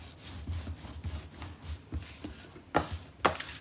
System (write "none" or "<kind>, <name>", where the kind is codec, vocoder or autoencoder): none